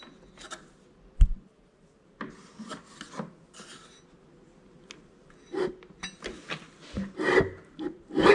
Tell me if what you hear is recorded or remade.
recorded